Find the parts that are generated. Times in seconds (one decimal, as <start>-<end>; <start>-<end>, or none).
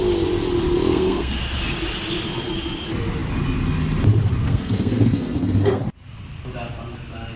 0.9-1.4; 4.4-5.8